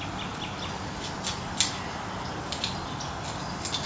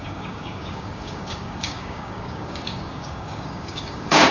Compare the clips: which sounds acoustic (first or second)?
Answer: first